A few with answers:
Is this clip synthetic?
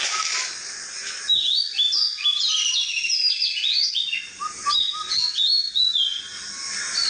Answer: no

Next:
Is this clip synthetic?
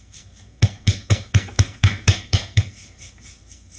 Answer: yes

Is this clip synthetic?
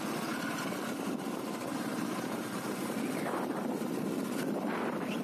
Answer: no